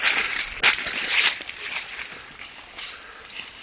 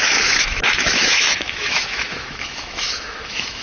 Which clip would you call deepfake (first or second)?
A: second